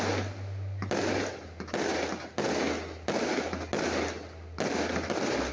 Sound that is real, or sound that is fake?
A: real